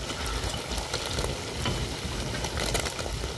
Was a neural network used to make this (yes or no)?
no